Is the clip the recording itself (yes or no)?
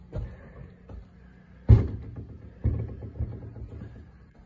yes